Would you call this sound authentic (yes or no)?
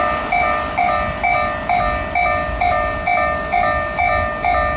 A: yes